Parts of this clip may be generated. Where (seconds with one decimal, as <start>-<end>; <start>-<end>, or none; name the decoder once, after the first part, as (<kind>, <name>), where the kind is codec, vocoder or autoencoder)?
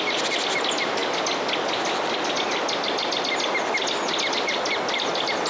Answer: none